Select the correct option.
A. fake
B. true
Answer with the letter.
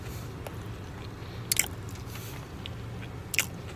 B